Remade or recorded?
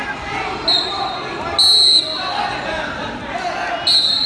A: recorded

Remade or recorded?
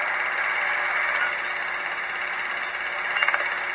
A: recorded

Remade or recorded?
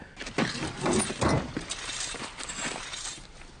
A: recorded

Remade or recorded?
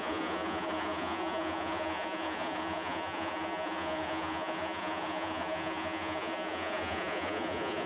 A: remade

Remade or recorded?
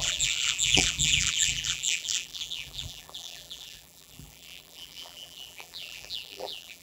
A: remade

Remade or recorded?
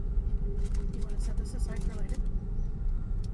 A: remade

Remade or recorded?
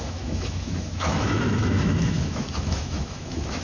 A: remade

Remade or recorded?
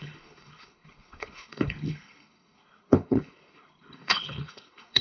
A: remade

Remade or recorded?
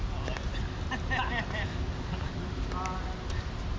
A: recorded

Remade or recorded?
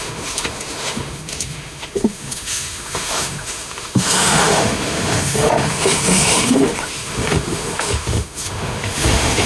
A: remade